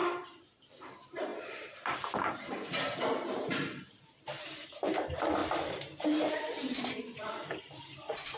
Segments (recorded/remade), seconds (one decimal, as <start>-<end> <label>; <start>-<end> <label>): 0.0-8.4 remade